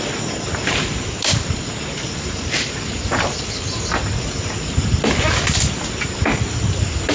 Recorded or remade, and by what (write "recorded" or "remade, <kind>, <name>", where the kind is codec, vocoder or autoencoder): recorded